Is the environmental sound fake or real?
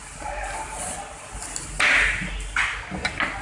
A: real